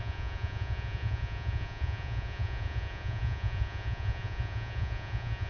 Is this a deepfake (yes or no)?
yes